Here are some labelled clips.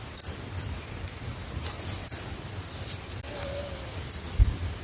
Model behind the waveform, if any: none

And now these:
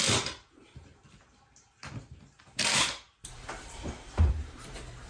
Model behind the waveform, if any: vocoder, BigVGAN v2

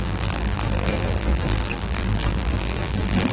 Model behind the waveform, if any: vocoder, BigVGAN v2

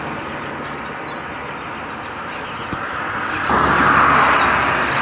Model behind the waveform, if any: none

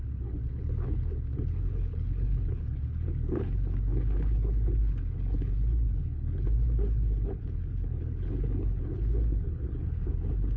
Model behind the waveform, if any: codec, HILCodec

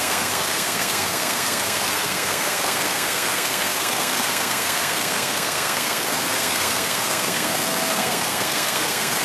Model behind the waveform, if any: codec, SNAC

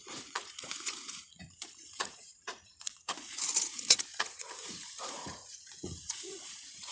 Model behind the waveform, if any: vocoder, Vocos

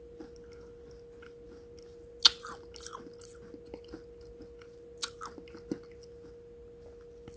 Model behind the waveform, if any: none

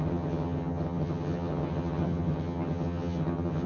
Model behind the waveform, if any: vocoder, HiFi-GAN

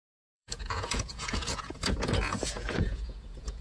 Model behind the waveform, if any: vocoder, Vocos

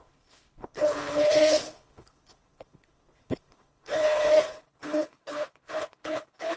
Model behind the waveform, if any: codec, HILCodec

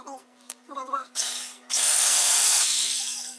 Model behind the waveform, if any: codec, SNAC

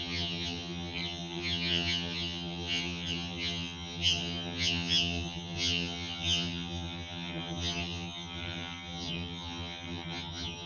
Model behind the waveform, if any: vocoder, HiFi-GAN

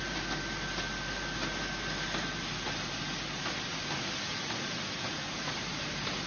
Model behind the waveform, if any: none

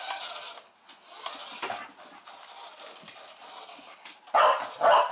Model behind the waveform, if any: none